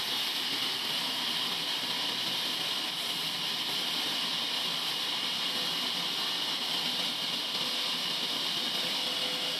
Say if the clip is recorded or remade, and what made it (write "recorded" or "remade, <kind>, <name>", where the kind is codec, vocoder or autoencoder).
recorded